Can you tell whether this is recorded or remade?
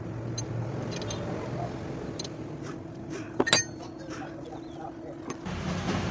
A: recorded